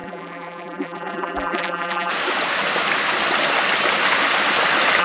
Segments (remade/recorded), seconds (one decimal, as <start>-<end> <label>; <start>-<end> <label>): 0.0-2.1 remade; 2.1-5.0 recorded